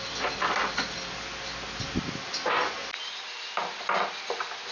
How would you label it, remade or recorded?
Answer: recorded